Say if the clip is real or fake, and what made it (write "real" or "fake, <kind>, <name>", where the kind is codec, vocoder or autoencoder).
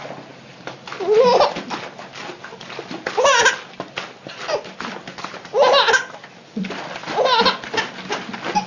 real